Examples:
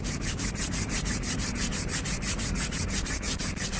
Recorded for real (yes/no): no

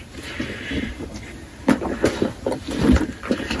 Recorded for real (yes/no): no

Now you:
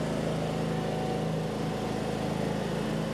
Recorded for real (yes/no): yes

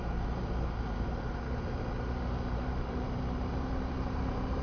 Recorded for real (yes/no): no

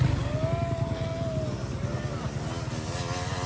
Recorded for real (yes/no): yes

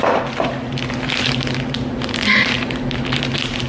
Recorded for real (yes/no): yes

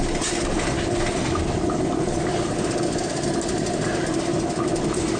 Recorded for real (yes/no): yes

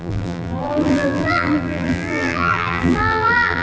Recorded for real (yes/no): no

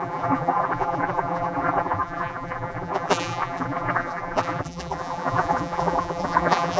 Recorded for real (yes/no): no